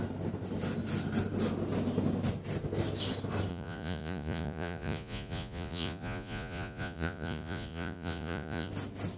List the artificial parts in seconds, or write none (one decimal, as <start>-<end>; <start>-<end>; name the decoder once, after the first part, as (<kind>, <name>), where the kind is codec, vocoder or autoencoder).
3.5-8.7 (vocoder, Vocos)